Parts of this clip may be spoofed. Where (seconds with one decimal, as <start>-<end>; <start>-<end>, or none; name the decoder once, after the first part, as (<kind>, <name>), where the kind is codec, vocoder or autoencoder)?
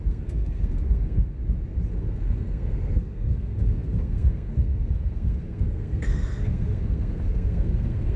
0.0-1.4 (codec, SNAC); 1.9-8.2